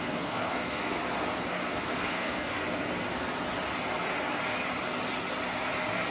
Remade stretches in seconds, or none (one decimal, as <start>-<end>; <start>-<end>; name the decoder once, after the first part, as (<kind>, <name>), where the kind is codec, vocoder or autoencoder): 0.0-1.0 (codec, SNAC); 1.5-2.8